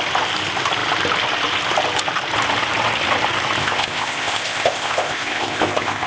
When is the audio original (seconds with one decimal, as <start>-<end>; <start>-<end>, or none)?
0.0-3.6